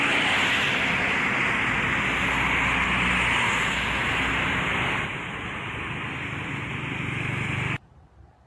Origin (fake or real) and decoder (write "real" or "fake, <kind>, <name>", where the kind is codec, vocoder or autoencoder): real